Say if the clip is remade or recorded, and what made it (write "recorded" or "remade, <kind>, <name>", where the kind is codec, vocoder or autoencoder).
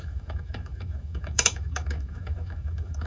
remade, autoencoder, DAC-VAE